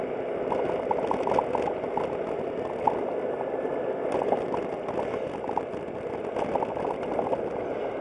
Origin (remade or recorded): recorded